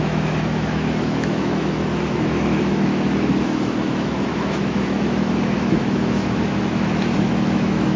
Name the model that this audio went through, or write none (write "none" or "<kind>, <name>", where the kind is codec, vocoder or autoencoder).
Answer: autoencoder, DAC-VAE